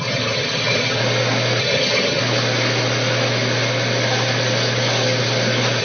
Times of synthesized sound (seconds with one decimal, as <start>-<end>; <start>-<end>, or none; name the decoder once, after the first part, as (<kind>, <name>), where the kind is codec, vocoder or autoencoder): 0.0-1.0 (vocoder, HiFi-GAN); 1.6-2.2